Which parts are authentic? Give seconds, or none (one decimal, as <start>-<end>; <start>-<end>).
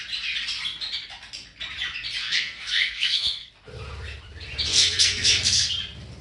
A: 0.0-2.2; 3.5-4.7; 5.7-6.2